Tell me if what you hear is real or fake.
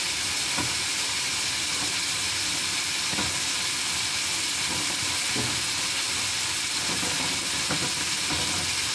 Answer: real